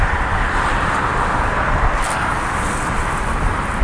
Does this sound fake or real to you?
fake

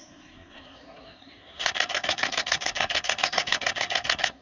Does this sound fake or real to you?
fake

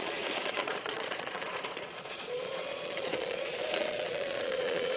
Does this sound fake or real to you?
fake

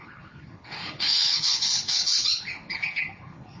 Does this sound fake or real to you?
fake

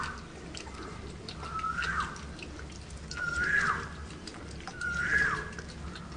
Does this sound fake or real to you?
real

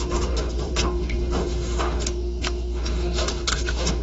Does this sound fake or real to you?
fake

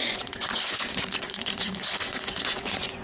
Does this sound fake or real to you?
fake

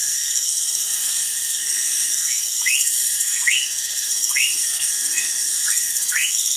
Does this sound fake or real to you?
fake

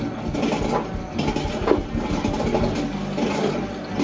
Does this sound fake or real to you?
real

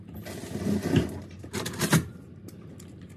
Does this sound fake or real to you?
real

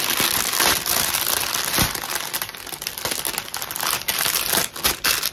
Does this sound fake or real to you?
real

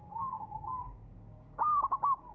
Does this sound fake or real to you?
fake